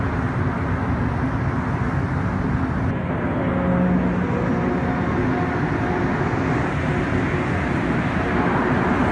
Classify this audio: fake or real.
real